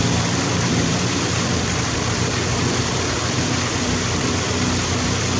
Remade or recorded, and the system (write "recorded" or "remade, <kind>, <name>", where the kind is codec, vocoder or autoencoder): remade, vocoder, BigVGAN v2